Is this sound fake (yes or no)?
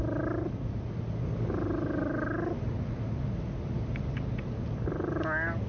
no